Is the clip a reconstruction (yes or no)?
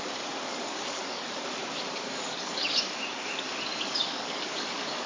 yes